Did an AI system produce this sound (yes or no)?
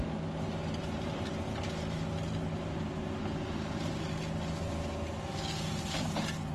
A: no